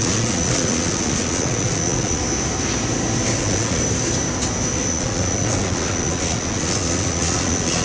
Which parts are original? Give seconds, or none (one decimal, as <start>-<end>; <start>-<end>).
2.2-3.4; 3.8-4.9